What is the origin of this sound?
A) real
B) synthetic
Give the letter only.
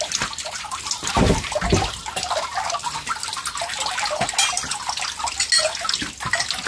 A